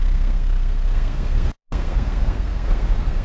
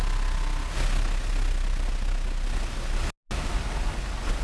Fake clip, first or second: first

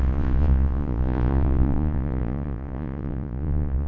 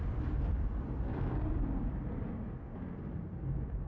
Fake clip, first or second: first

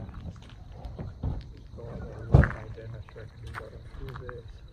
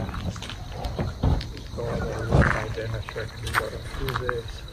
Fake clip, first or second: first